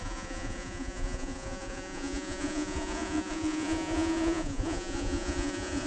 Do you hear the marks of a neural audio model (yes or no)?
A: yes